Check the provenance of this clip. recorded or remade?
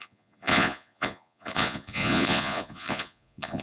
remade